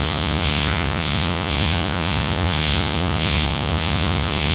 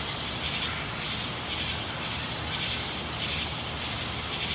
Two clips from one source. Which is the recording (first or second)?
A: second